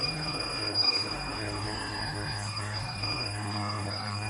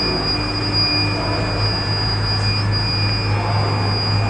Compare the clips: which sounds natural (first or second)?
second